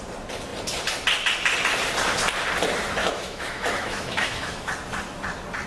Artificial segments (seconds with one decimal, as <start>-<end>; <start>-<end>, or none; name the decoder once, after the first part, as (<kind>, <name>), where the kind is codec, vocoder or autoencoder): 3.0-4.7 (autoencoder, DAC-VAE)